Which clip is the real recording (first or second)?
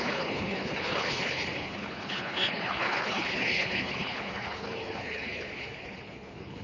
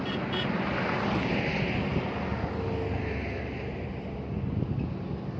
second